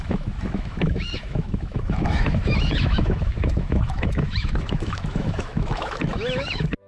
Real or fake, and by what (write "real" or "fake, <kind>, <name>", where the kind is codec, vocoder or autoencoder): fake, autoencoder, DAC-VAE